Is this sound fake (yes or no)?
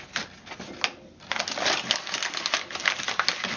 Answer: no